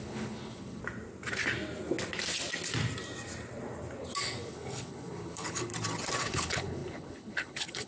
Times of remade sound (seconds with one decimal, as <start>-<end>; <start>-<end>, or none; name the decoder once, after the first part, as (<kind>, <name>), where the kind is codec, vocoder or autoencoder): 0.0-0.8 (codec, HILCodec); 4.2-5.7; 6.2-7.9